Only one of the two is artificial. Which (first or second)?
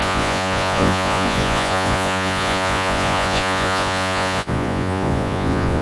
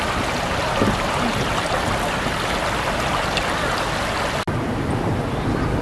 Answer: first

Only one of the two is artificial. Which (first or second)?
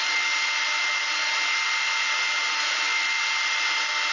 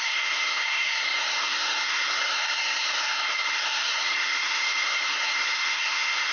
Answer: second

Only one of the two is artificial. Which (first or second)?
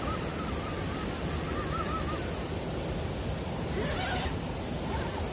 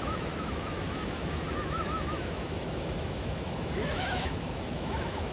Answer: second